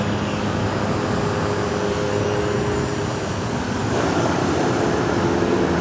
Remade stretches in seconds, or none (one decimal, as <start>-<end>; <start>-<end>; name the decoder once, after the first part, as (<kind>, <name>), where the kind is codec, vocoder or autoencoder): 0.0-0.6 (codec, DAC); 1.9-2.9; 3.5-4.4